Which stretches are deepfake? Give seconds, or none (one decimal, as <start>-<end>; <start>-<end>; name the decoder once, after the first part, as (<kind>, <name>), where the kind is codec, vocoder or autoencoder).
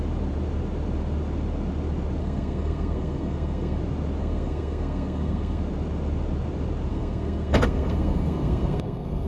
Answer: 2.2-3.8 (codec, SNAC); 4.2-5.6; 6.9-9.3